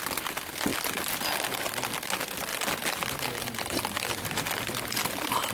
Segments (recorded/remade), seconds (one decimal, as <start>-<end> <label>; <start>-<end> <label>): 0.0-5.5 recorded